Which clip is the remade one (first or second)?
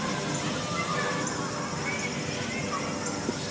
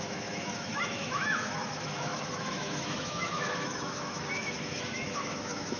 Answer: second